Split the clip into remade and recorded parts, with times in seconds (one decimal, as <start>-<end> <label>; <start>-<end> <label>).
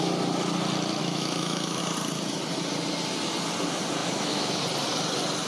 0.0-1.0 recorded; 1.0-1.8 remade; 1.8-4.0 recorded; 4.0-4.6 remade; 4.6-5.5 recorded